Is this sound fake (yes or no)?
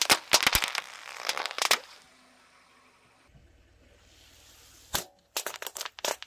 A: no